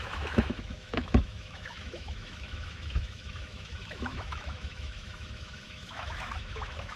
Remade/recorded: remade